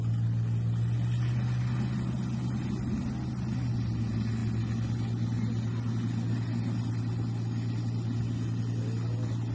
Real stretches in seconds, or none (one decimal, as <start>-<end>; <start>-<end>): 0.0-9.5